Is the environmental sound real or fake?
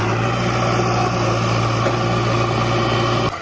real